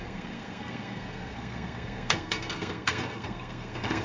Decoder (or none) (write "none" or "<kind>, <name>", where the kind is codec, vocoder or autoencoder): codec, SNAC